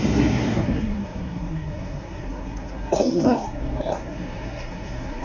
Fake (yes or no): yes